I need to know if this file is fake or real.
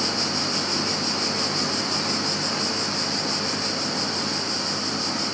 real